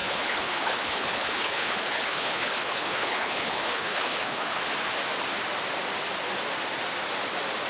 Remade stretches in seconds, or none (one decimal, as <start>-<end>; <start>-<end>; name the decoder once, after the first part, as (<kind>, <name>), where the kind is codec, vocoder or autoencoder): 0.0-4.6 (codec, HILCodec)